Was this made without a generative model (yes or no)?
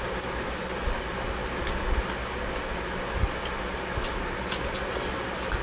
yes